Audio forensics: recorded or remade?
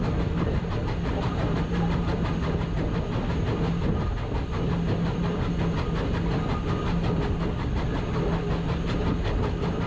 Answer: recorded